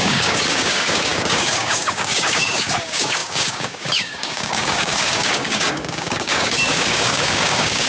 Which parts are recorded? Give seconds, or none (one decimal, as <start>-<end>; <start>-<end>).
none